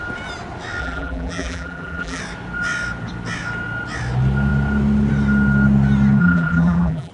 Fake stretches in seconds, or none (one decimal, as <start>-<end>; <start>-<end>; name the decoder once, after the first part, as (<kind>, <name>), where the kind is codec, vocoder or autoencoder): 0.8-2.2 (vocoder, BigVGAN v2); 6.2-7.1